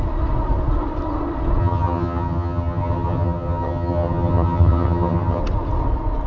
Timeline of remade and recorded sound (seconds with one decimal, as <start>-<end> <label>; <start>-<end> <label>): 0.0-1.6 recorded; 1.6-5.4 remade; 5.4-6.3 recorded